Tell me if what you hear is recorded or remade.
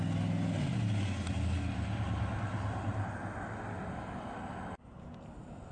recorded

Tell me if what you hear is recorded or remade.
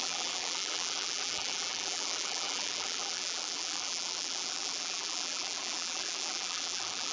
remade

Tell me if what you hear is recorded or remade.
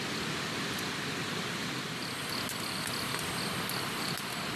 recorded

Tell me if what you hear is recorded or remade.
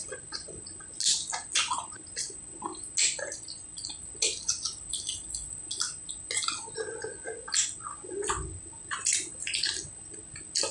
recorded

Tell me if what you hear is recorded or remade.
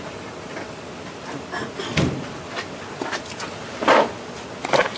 recorded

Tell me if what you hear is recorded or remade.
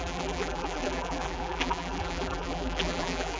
remade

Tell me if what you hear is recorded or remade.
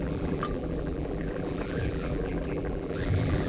remade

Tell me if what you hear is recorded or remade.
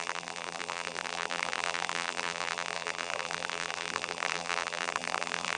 remade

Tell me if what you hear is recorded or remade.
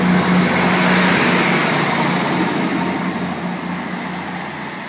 recorded